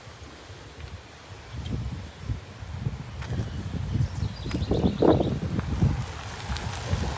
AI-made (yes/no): no